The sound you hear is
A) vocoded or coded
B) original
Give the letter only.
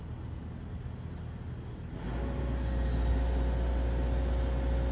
B